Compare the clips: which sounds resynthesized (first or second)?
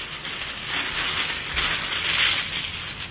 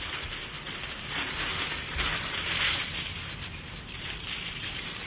second